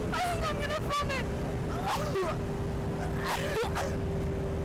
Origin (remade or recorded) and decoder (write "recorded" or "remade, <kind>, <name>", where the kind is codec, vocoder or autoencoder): recorded